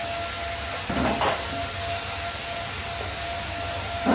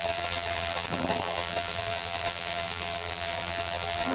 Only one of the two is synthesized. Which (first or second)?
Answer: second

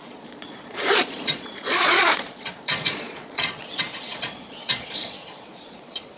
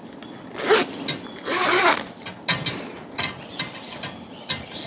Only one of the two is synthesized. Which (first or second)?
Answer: first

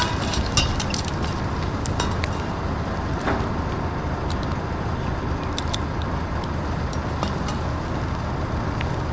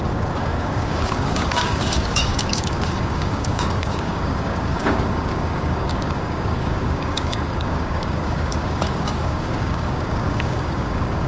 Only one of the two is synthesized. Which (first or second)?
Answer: second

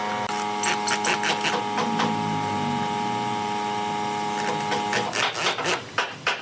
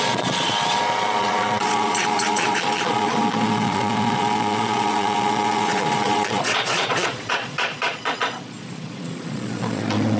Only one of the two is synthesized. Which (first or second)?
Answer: second